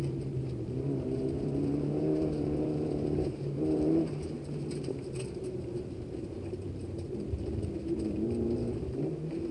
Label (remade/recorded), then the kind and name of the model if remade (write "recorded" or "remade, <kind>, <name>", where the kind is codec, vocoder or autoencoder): remade, vocoder, BigVGAN v2